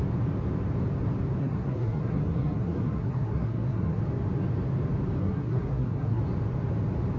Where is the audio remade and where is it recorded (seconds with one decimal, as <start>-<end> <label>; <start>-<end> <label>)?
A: 0.0-1.4 recorded; 1.4-4.0 remade; 4.0-5.2 recorded; 5.2-6.2 remade; 6.2-7.2 recorded